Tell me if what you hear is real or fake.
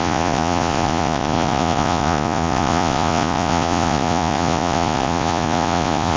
fake